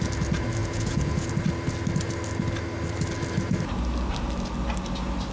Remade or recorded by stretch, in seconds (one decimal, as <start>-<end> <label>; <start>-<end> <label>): 0.0-0.6 recorded; 0.6-1.3 remade; 1.3-5.3 recorded